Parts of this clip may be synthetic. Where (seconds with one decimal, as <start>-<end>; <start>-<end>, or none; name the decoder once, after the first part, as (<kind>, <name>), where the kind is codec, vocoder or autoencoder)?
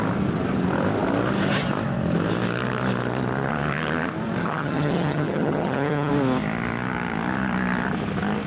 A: 4.4-6.1 (vocoder, HiFi-GAN)